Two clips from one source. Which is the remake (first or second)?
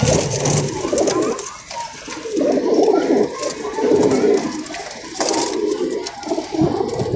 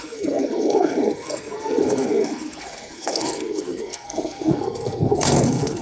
second